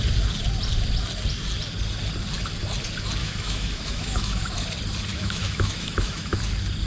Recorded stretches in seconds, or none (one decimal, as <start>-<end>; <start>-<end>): 0.0-3.2; 4.4-5.1; 6.4-6.9